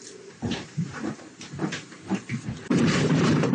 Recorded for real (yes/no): no